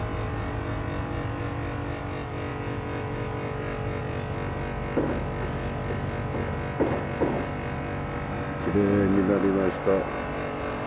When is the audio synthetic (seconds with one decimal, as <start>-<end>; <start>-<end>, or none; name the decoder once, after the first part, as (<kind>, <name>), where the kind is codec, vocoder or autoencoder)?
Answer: none